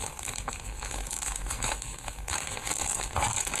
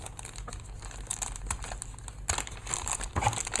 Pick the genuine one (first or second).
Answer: second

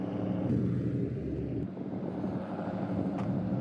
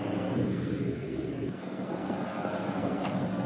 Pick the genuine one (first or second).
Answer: first